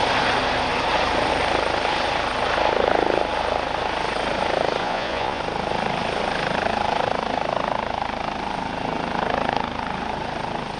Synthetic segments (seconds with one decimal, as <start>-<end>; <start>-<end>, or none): 4.8-5.4